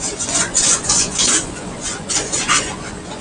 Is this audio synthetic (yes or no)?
yes